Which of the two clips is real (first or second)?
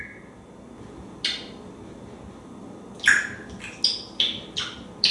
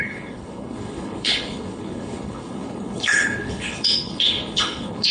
first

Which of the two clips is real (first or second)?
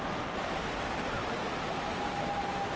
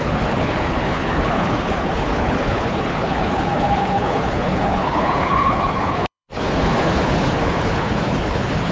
first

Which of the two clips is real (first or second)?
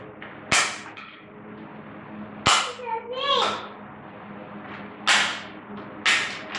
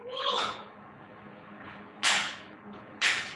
first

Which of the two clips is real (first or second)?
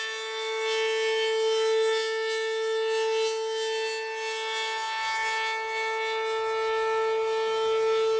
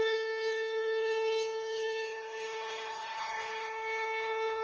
first